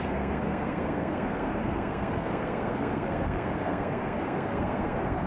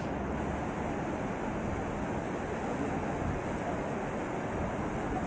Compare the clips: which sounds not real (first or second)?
first